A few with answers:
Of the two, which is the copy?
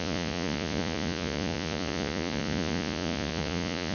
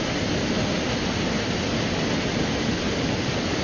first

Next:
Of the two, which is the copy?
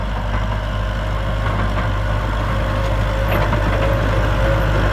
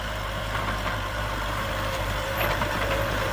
second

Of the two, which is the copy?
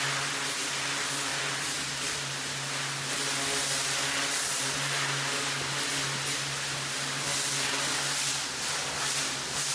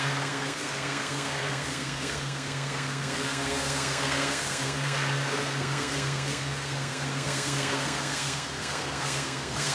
second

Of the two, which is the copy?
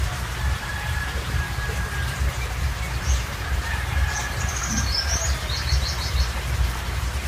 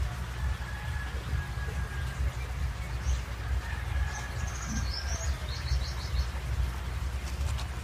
first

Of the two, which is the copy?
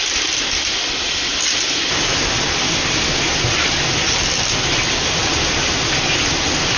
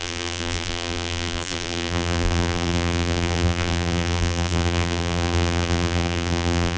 second